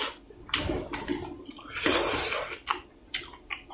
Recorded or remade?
recorded